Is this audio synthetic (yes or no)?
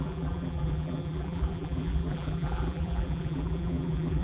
yes